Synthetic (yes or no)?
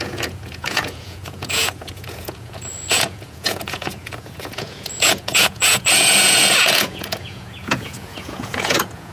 yes